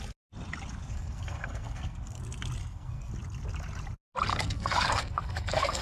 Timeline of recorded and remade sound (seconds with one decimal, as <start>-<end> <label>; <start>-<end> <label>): 0.0-0.8 recorded; 0.8-2.2 remade; 2.2-2.6 recorded; 2.6-3.1 remade; 3.1-4.3 recorded; 4.3-5.8 remade